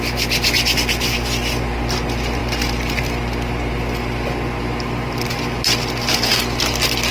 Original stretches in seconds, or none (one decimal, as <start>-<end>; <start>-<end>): 0.0-7.1